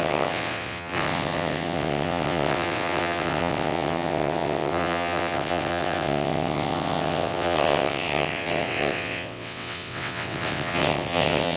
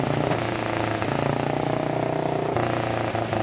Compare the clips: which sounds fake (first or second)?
first